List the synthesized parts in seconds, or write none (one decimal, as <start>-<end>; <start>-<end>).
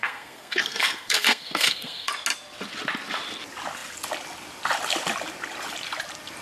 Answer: 0.0-2.1